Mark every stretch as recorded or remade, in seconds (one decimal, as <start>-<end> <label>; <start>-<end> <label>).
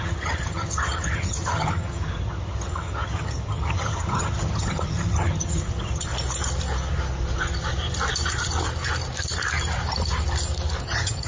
0.0-6.1 remade; 6.1-10.8 recorded; 10.8-11.3 remade